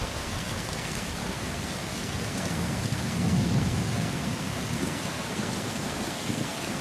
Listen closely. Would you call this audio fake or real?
fake